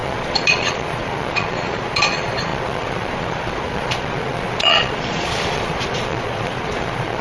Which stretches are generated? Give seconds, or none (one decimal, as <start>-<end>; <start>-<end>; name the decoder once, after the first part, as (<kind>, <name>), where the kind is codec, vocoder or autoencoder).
0.0-7.2 (vocoder, Vocos)